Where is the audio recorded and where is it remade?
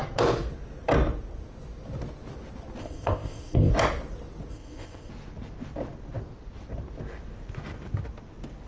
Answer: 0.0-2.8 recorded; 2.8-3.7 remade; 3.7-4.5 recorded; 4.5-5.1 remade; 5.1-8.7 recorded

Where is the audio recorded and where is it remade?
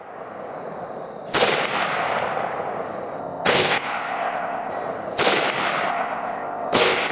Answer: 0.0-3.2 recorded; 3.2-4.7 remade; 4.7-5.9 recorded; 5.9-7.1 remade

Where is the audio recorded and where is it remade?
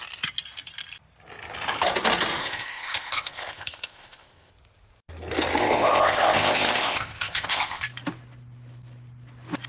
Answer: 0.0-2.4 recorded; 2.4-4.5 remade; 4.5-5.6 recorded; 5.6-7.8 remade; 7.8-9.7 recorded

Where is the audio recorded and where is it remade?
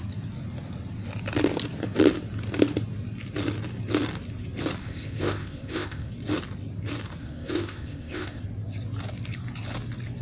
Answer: 0.0-4.8 recorded; 4.8-6.1 remade; 6.1-7.2 recorded; 7.2-8.4 remade; 8.4-10.2 recorded